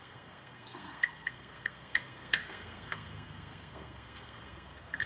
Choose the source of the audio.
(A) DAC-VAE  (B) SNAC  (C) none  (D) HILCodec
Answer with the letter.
B